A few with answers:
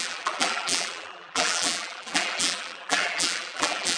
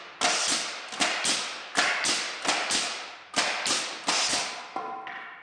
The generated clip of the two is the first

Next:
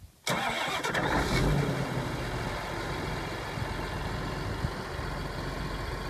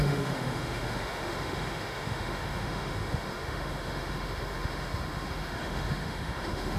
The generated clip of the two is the second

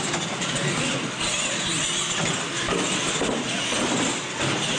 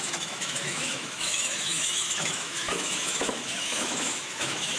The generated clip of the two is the second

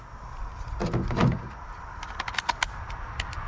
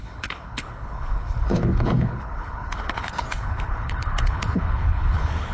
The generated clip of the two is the second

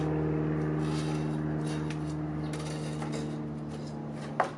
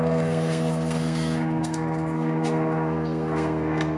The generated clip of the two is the second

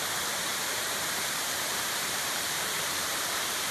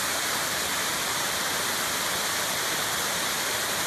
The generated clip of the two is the first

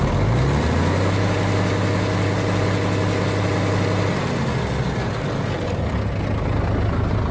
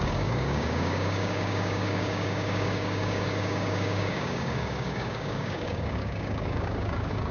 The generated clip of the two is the second